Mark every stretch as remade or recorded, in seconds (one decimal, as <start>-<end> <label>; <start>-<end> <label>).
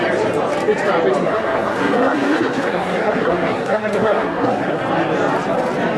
0.0-1.2 recorded; 1.2-4.8 remade; 4.8-6.0 recorded